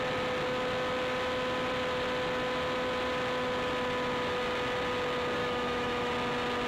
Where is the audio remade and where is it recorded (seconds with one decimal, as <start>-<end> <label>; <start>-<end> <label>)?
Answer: 0.0-5.4 recorded; 5.4-6.1 remade; 6.1-6.7 recorded